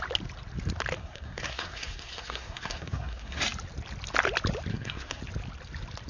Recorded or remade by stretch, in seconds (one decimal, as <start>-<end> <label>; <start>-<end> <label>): 0.0-1.0 recorded; 1.0-3.4 remade; 3.4-4.7 recorded; 4.7-5.2 remade; 5.2-6.1 recorded